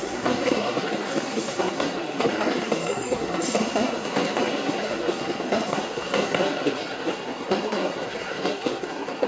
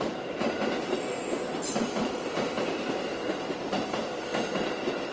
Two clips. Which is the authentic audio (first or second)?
second